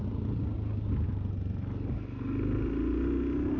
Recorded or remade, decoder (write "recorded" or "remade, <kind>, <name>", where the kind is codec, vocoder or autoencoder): recorded